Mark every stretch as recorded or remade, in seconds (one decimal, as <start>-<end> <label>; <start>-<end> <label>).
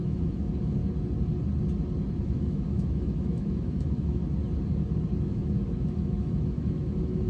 0.0-0.8 remade; 0.8-2.2 recorded; 2.2-4.2 remade; 4.2-5.2 recorded; 5.2-7.3 remade